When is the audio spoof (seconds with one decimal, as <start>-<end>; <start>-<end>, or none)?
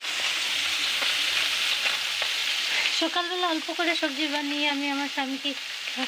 none